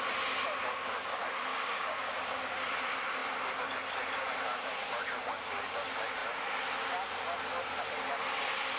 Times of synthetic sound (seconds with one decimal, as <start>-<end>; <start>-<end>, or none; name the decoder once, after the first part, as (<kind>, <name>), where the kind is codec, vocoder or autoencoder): 1.5-2.2 (codec, DAC)